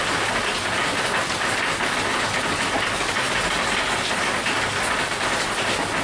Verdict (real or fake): real